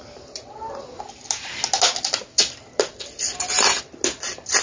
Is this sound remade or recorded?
recorded